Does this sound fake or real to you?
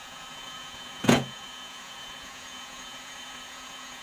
fake